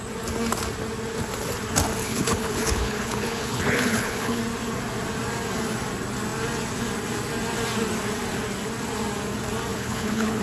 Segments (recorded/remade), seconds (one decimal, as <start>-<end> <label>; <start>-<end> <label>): 0.0-2.0 recorded; 2.0-4.4 remade; 4.4-9.7 recorded; 9.7-10.4 remade